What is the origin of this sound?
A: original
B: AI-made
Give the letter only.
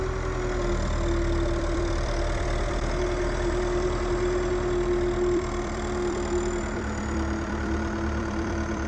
B